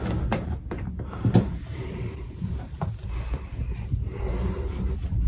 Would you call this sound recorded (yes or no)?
yes